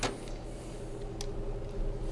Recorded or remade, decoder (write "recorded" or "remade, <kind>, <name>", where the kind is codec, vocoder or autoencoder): recorded